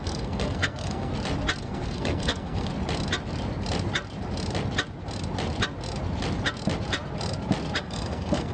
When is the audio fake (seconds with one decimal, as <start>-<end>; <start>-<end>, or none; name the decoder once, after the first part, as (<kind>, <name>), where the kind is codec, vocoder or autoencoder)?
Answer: 0.0-1.1 (codec, SNAC); 1.6-2.7; 7.8-8.5